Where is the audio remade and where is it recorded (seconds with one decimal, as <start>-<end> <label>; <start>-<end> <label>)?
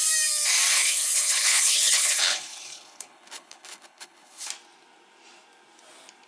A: 0.0-0.7 recorded; 0.7-4.5 remade; 4.5-6.3 recorded